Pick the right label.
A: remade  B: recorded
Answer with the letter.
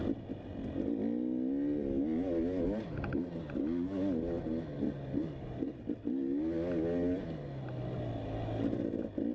B